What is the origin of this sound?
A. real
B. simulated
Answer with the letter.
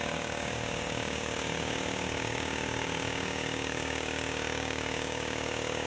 B